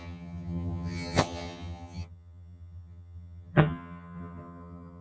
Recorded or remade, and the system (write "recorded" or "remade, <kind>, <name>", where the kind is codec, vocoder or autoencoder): remade, vocoder, HiFi-GAN